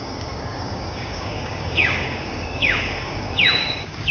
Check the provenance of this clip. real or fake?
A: fake